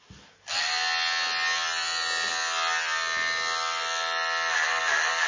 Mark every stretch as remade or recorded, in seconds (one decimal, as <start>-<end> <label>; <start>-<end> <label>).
0.0-5.3 recorded